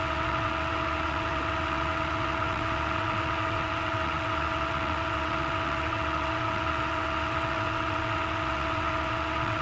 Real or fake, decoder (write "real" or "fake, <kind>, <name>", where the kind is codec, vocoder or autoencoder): fake, vocoder, WaveNeXt